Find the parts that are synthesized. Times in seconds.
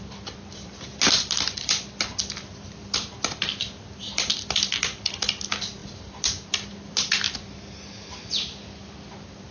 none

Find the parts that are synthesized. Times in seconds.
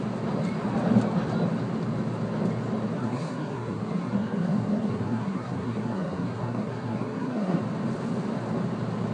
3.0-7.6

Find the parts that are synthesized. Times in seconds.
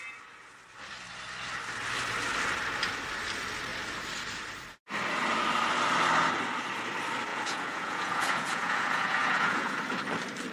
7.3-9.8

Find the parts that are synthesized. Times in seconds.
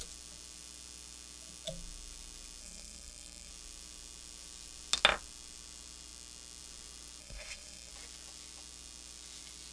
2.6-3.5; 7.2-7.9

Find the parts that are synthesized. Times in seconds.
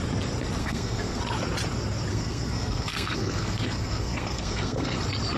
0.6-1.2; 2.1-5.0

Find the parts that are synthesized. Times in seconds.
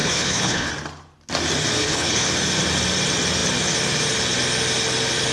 0.0-0.7; 1.8-2.3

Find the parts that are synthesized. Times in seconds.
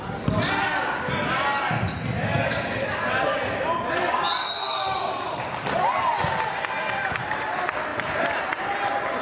7.9-8.6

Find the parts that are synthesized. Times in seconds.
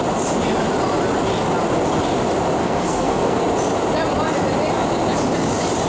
2.6-3.4